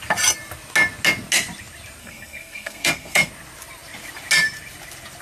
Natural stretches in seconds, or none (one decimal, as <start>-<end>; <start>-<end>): 0.0-2.0; 3.3-5.2

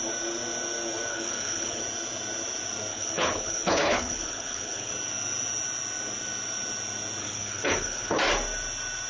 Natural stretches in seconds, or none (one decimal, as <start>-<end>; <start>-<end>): 0.0-1.1; 1.8-2.9; 4.9-7.2; 8.2-9.1